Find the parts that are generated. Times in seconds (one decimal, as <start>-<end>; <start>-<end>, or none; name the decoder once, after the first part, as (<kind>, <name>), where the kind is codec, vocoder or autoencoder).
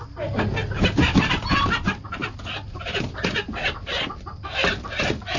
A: none